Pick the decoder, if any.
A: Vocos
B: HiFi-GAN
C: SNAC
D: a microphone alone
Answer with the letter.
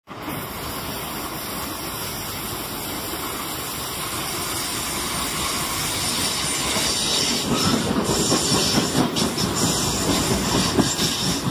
D